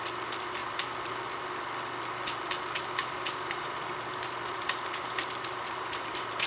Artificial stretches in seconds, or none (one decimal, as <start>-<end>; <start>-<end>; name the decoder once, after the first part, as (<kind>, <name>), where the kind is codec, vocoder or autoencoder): 0.6-1.2 (vocoder, BigVGAN v2); 3.0-6.5